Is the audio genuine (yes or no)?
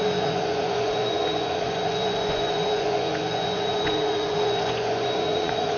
no